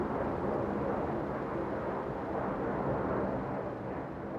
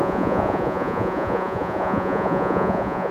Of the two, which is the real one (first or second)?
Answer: first